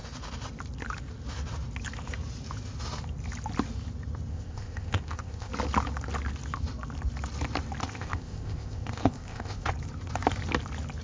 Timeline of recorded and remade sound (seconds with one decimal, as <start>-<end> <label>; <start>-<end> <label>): 0.0-4.3 recorded; 4.3-5.5 remade; 5.5-7.8 recorded; 7.8-9.7 remade; 9.7-11.0 recorded